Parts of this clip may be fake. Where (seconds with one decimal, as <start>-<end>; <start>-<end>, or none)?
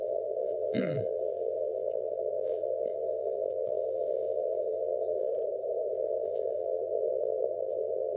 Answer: 0.0-5.3; 5.9-8.2